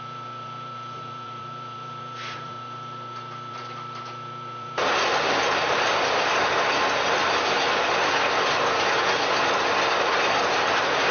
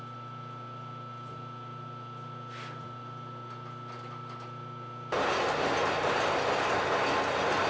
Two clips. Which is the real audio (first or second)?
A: second